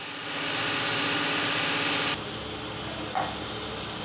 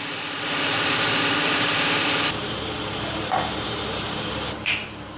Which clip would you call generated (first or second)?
second